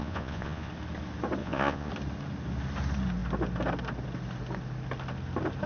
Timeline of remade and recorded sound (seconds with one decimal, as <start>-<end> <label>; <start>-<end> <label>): 0.0-0.7 remade; 0.7-1.4 recorded; 1.4-1.9 remade; 1.9-5.7 recorded